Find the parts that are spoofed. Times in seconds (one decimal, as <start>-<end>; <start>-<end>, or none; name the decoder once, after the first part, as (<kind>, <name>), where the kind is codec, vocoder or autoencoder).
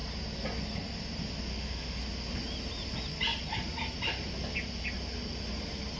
1.5-2.0 (autoencoder, DAC-VAE)